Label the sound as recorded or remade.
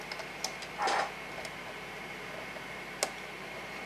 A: recorded